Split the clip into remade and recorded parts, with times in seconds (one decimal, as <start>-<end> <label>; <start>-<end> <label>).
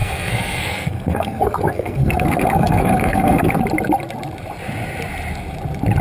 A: 0.0-3.6 remade; 3.6-6.0 recorded